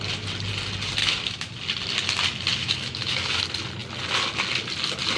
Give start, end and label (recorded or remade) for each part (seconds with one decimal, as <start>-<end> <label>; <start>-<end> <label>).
0.0-1.0 recorded; 1.0-1.5 remade; 1.5-2.6 recorded; 2.6-3.4 remade; 3.4-5.2 recorded